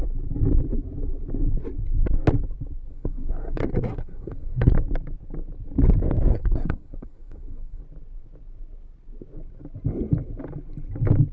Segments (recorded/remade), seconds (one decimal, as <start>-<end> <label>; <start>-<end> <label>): 0.0-2.9 recorded; 2.9-4.7 remade; 4.7-6.3 recorded; 6.3-7.8 remade; 7.8-11.3 recorded